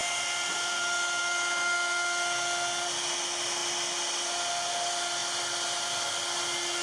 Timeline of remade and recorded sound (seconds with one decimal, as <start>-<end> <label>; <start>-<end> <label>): 0.0-6.8 recorded